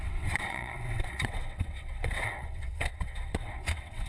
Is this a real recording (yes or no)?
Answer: no